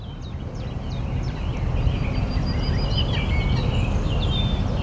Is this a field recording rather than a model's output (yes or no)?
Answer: yes